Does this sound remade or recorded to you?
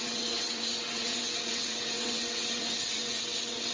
remade